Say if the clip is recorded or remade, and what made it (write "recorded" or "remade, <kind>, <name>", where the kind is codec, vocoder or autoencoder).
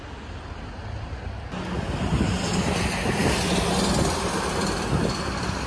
recorded